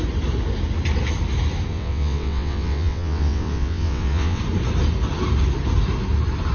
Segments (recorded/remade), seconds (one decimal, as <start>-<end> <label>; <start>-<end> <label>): 0.0-1.7 recorded; 1.7-4.4 remade; 4.4-6.5 recorded